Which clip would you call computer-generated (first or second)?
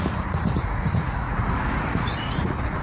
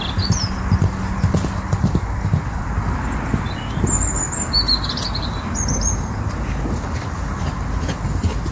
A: first